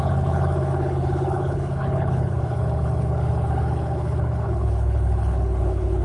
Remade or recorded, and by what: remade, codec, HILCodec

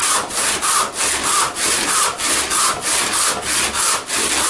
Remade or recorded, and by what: recorded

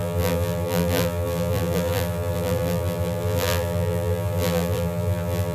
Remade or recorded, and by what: remade, vocoder, BigVGAN v2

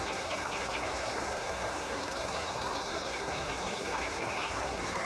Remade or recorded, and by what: remade, codec, SNAC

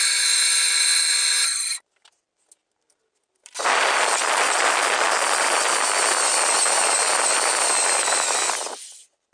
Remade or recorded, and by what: recorded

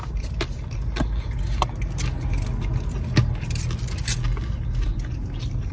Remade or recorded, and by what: recorded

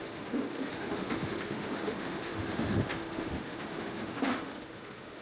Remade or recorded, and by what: remade, autoencoder, DAC-VAE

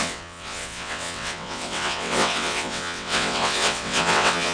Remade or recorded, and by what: remade, vocoder, WaveNeXt